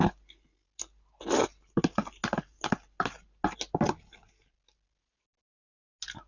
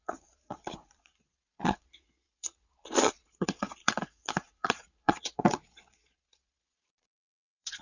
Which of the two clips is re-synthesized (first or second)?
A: second